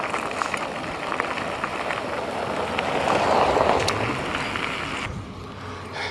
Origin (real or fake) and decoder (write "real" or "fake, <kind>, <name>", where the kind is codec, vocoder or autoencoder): real